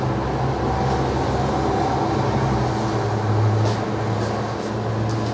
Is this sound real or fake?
real